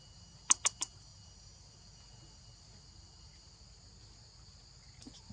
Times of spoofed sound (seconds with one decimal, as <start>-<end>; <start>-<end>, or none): none